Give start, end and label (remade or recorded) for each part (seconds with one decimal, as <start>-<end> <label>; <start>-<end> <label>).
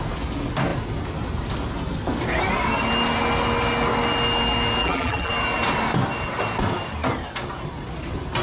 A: 0.0-4.8 recorded; 4.8-5.3 remade; 5.3-8.4 recorded